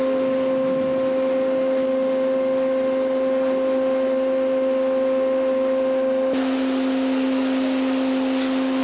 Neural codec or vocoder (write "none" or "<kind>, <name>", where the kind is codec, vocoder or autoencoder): none